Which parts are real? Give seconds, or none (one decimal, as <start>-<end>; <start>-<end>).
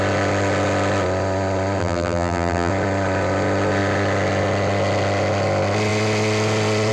0.0-1.8; 2.7-6.9